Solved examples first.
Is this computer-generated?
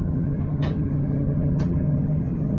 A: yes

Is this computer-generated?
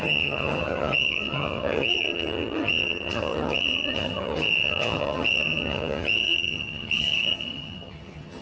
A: yes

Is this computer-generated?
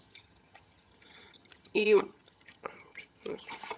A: yes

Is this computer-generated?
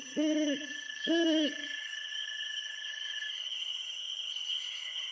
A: yes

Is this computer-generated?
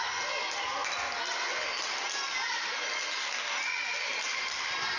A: no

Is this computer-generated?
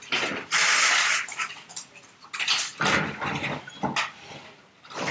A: no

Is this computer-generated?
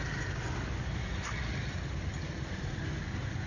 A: no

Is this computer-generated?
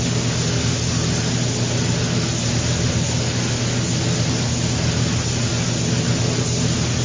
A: no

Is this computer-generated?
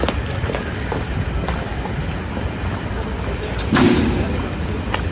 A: no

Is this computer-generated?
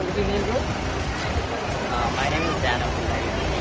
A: no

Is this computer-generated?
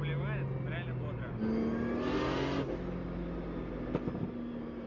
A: no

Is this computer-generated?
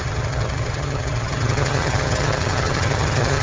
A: yes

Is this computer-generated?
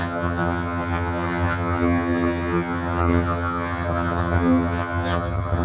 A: yes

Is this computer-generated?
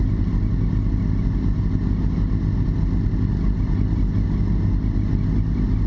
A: no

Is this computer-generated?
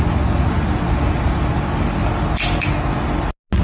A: no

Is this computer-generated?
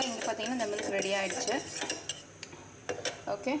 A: no